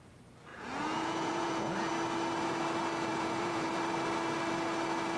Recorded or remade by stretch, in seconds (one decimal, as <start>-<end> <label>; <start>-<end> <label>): 0.0-0.5 recorded; 0.5-1.9 remade; 1.9-3.1 recorded; 3.1-3.7 remade; 3.7-5.2 recorded